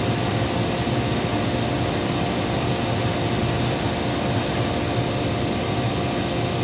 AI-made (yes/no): no